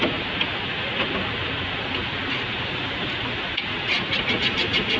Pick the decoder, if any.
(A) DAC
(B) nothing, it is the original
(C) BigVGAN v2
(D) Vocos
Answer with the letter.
B